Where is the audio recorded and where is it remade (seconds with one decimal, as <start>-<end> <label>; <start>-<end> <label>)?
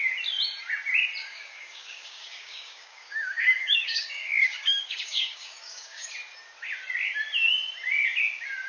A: 0.0-1.2 recorded; 1.2-6.1 remade; 6.1-8.7 recorded